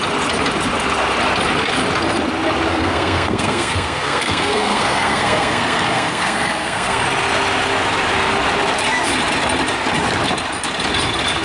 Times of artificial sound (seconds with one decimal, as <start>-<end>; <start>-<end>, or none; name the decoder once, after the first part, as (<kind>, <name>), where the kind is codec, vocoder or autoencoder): 2.7-7.0 (codec, SNAC)

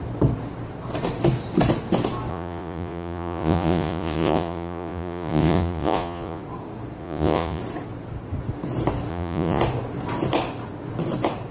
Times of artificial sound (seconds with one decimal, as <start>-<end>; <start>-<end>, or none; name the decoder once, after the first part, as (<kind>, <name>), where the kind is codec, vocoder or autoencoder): 2.3-6.4 (vocoder, Vocos); 7.0-7.6; 9.1-9.6

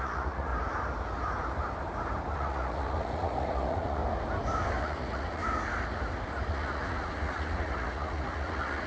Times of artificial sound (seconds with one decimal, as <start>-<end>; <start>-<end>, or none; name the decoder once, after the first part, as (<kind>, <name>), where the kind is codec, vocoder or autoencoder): 0.0-0.5 (vocoder, Vocos); 2.3-4.0; 4.8-5.4; 6.5-8.9

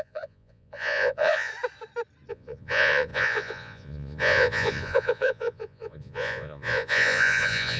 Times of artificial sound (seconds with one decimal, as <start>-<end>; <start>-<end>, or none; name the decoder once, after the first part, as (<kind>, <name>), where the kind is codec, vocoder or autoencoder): 0.0-1.5 (vocoder, Vocos); 2.3-7.8

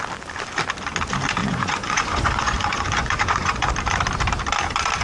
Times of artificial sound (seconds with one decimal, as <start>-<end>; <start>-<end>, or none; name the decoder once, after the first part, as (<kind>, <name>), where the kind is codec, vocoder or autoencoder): 1.4-3.7 (vocoder, Vocos)

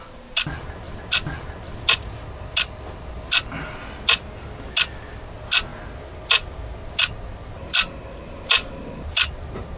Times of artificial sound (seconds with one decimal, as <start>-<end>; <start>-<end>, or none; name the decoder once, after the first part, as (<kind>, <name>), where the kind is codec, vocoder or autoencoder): none

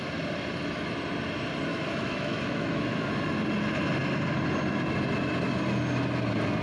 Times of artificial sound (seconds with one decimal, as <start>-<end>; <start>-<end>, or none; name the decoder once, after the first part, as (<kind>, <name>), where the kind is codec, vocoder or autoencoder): 1.7-3.1 (autoencoder, DAC-VAE)